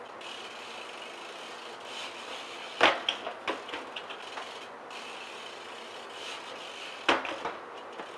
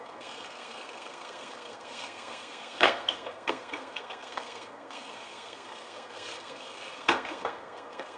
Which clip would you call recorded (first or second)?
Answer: first